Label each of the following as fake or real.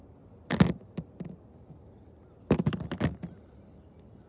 real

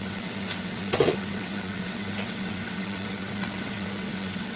fake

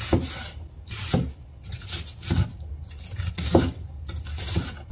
real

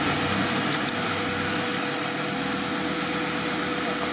real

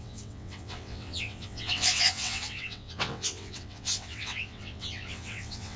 fake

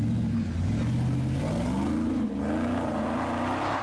real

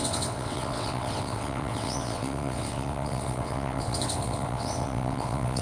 fake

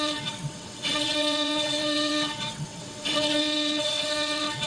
fake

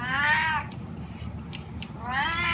real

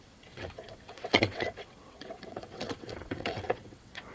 fake